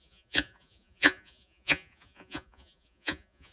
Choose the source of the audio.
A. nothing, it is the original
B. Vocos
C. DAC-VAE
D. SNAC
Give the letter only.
B